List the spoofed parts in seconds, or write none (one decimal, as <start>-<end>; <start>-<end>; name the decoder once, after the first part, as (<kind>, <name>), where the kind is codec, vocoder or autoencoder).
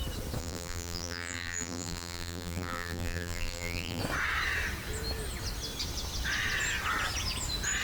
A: 0.4-4.0 (vocoder, BigVGAN v2)